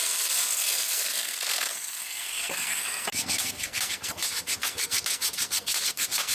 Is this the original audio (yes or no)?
no